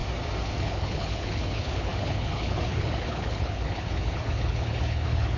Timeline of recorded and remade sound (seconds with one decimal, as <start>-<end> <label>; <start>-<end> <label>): 0.0-0.6 recorded; 0.6-5.4 remade